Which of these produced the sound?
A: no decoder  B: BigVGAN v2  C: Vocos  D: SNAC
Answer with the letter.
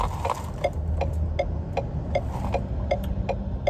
A